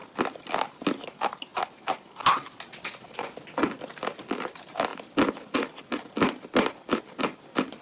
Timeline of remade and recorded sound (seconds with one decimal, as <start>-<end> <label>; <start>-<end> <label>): 0.0-7.8 recorded